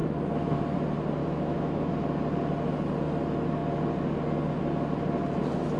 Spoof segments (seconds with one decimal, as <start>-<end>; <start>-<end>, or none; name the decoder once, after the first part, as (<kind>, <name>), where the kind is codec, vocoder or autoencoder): 0.0-0.6 (autoencoder, DAC-VAE); 1.2-1.9